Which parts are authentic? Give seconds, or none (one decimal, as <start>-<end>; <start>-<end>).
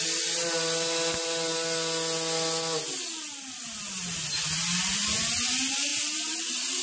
0.0-5.9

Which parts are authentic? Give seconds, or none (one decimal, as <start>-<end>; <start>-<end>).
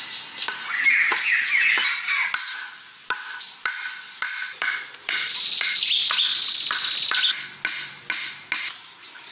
0.0-9.3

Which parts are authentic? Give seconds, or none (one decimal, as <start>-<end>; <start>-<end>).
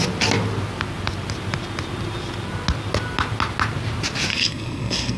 0.0-4.3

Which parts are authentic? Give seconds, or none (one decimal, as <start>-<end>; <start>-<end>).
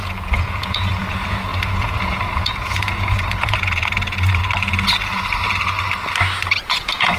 4.4-6.7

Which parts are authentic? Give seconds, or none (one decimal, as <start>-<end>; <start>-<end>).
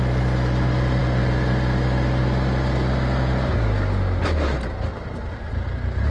0.0-6.1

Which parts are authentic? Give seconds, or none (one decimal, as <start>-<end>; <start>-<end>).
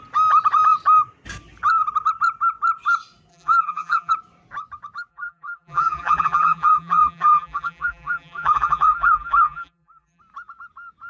0.0-3.3; 4.1-5.1; 10.2-11.1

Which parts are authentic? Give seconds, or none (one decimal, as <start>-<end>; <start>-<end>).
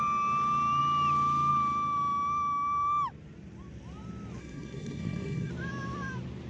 0.0-4.4; 5.5-6.5